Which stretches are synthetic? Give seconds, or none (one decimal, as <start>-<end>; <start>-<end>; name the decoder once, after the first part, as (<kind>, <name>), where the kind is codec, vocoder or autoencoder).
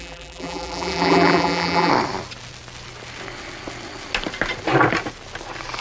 0.0-1.9 (vocoder, BigVGAN v2)